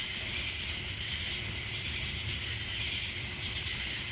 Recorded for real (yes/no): yes